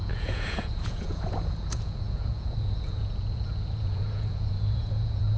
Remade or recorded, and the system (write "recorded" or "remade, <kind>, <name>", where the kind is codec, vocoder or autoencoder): remade, vocoder, Vocos